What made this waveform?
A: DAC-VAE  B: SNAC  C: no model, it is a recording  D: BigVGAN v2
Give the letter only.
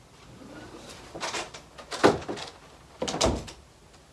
C